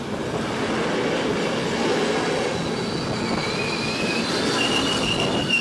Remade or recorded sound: recorded